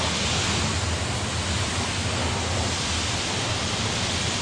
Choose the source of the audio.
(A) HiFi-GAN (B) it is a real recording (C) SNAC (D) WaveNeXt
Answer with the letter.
B